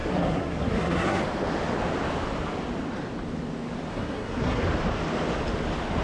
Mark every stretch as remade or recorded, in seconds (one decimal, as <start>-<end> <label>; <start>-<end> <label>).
0.0-1.2 remade; 1.2-3.9 recorded; 3.9-4.6 remade; 4.6-6.0 recorded